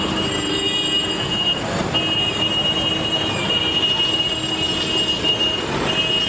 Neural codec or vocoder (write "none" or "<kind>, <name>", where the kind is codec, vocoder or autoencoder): none